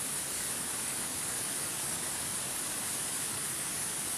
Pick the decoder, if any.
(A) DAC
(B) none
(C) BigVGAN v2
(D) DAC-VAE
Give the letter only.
A